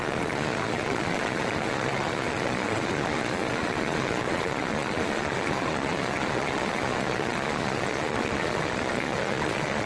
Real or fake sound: fake